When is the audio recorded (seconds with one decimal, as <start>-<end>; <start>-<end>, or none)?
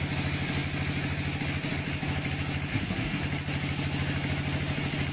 0.0-2.7; 3.2-5.1